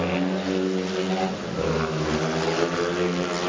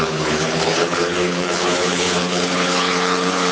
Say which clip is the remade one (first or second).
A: second